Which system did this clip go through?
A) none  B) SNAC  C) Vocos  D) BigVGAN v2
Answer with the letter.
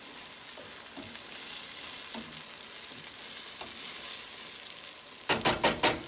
A